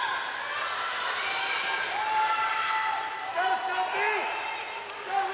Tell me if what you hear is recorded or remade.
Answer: recorded